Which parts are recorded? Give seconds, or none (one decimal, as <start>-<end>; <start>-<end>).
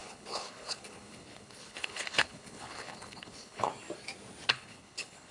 3.7-4.5